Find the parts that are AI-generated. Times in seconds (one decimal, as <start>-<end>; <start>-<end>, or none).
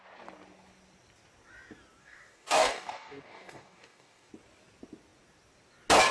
2.0-4.3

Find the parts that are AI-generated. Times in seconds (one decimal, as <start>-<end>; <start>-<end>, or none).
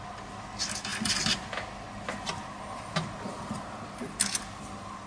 none